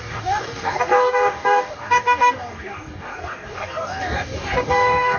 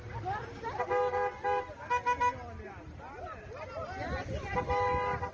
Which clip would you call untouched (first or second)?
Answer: second